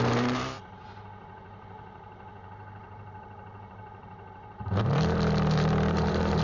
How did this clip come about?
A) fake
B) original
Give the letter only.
A